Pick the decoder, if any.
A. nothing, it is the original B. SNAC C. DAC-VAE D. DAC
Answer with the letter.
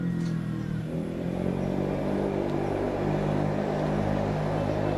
A